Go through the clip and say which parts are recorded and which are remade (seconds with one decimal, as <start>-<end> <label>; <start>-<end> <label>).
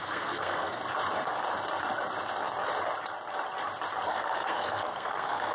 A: 0.0-0.8 remade; 0.8-4.1 recorded; 4.1-5.5 remade